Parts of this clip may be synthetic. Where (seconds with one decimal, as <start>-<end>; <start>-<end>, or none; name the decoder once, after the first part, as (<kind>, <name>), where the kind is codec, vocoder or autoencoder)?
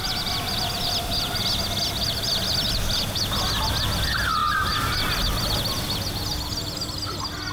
none